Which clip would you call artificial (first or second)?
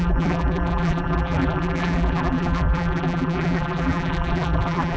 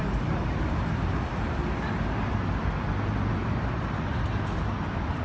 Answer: first